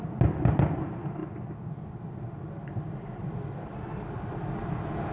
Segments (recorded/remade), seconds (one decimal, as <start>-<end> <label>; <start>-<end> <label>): 0.0-5.1 recorded